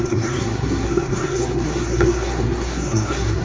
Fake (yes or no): yes